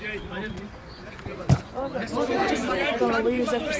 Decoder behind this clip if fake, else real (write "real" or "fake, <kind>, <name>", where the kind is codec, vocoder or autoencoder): fake, vocoder, Vocos